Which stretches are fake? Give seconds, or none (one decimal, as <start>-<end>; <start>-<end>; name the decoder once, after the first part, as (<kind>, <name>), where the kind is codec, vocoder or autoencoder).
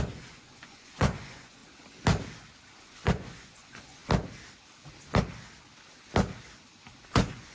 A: 0.0-1.6 (vocoder, Vocos); 2.8-4.0; 7.0-7.5